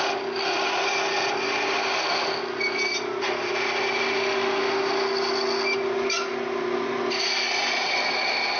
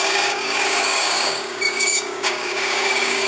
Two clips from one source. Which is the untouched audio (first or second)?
first